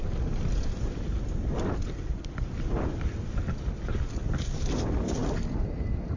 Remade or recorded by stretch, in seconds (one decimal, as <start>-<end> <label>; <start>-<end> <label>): 0.0-6.2 recorded